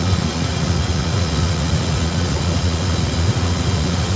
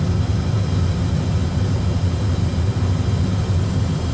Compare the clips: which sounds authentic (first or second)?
second